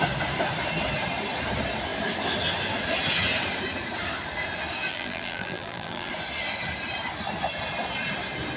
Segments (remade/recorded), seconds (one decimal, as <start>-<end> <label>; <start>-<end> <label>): 0.0-4.9 recorded; 4.9-6.1 remade; 6.1-8.6 recorded